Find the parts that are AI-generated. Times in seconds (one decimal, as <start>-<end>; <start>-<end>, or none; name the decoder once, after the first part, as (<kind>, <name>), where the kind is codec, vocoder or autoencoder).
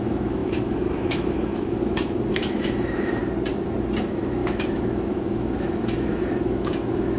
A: 0.0-3.2 (autoencoder, DAC-VAE); 4.0-7.2